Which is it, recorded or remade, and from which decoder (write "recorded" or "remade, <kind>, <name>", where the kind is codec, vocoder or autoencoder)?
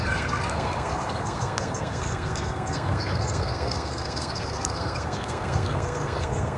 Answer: remade, codec, SNAC